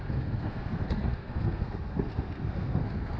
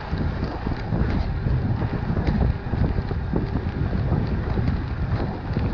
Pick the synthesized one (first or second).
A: first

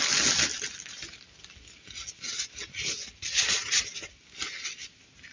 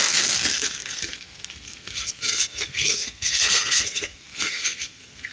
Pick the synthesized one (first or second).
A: second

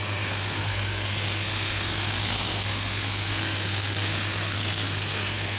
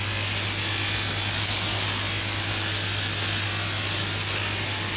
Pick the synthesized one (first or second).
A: first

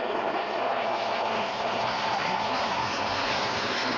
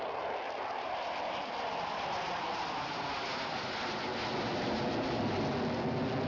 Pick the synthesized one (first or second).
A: first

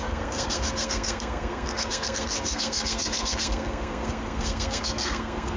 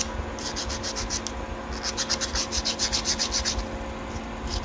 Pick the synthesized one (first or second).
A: first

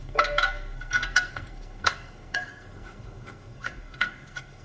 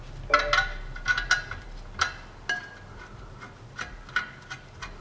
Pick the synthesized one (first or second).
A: first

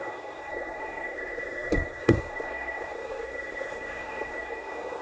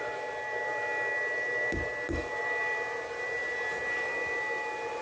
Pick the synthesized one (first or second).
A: first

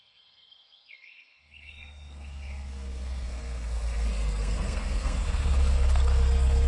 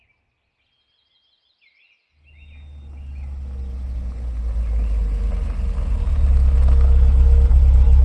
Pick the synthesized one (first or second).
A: first